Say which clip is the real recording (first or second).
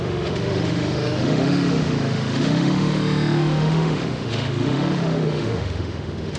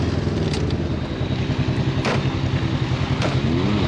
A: second